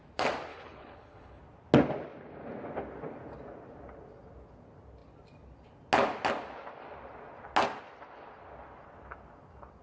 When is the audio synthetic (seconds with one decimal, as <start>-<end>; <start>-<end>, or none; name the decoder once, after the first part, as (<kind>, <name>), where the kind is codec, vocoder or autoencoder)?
0.5-1.4 (codec, HILCodec)